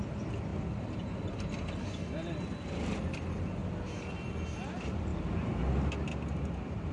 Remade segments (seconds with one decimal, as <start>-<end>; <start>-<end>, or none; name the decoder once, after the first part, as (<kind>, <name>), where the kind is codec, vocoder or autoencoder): 6.1-6.9 (vocoder, BigVGAN v2)

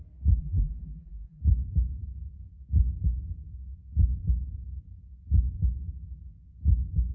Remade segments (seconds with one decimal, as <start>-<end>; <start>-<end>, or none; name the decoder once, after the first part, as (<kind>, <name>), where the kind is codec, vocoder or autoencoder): 0.4-1.4 (vocoder, BigVGAN v2)

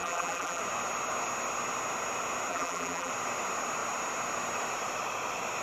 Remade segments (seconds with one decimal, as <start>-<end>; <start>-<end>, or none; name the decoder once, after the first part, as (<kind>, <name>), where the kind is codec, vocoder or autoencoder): 0.0-0.6 (vocoder, BigVGAN v2); 2.5-3.1

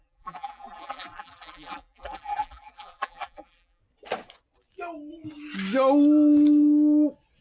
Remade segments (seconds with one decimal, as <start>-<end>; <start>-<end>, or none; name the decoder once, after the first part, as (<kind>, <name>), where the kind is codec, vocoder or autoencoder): 0.0-3.8 (vocoder, BigVGAN v2)

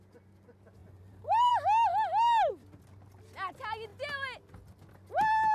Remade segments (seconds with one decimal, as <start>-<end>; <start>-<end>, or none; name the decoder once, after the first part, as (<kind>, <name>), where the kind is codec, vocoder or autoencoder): 0.8-1.5 (vocoder, BigVGAN v2)

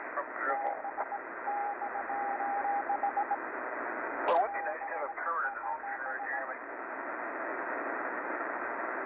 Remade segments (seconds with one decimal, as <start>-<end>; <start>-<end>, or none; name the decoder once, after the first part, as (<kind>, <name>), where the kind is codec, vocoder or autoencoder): 0.0-9.1 (vocoder, BigVGAN v2)

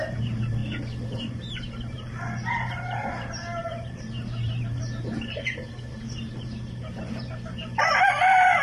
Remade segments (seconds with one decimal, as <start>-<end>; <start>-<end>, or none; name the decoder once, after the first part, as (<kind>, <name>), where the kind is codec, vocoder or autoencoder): 0.0-0.6 (vocoder, BigVGAN v2); 1.2-8.6